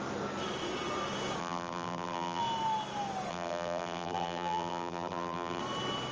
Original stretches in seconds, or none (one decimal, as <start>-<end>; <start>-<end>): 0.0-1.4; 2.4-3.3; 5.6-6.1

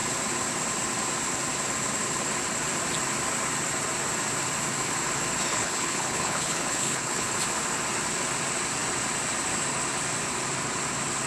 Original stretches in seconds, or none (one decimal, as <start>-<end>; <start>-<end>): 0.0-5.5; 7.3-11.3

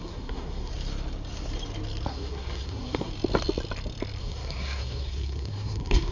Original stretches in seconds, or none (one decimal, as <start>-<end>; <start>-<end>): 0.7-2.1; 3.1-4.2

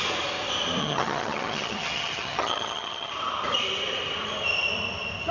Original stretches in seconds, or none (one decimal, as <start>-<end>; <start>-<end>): 0.0-0.8; 3.1-5.3

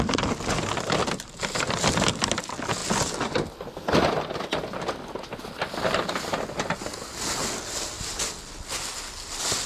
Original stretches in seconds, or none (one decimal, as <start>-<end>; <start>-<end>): 0.0-9.7

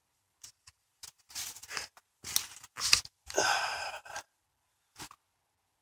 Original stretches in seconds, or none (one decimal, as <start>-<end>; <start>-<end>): 0.0-5.8